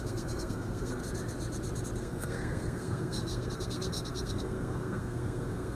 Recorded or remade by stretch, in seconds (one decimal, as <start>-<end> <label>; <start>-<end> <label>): 0.0-1.0 remade; 1.0-2.0 recorded; 2.0-5.8 remade